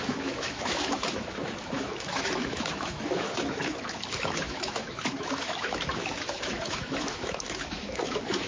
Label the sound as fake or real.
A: fake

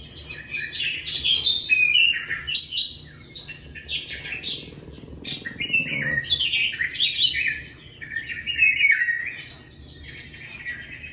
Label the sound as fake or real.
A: real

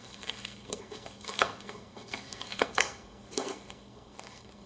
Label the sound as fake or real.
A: fake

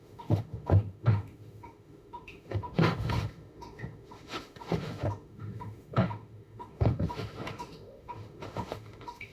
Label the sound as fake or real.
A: fake